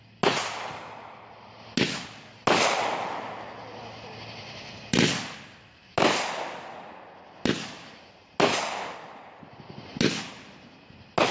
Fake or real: real